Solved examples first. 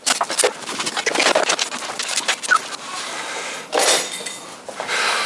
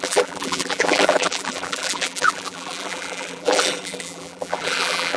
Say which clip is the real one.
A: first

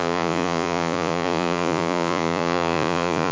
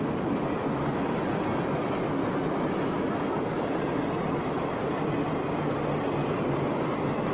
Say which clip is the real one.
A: second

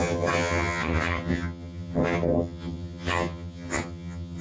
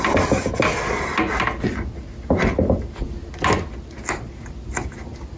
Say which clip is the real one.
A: second